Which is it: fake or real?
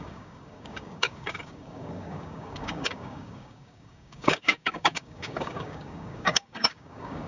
fake